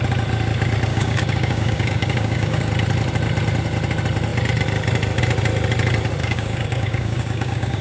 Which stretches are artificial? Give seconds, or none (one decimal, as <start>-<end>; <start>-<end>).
0.9-2.7; 6.2-7.8